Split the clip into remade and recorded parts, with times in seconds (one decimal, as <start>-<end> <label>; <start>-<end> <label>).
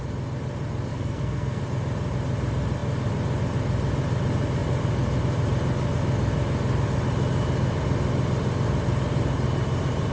0.0-0.9 recorded; 0.9-1.6 remade; 1.6-10.1 recorded